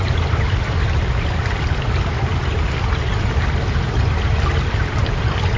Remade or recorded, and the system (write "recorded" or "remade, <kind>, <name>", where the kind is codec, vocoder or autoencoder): remade, vocoder, BigVGAN v2